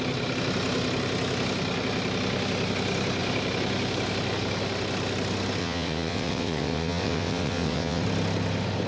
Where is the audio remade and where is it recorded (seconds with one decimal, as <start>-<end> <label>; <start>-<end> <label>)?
0.0-5.6 recorded; 5.6-8.0 remade; 8.0-8.9 recorded